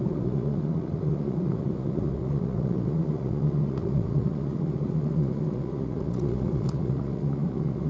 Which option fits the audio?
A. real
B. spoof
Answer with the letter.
B